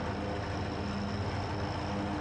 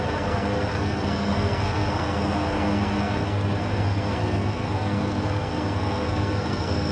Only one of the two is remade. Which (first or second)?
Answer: second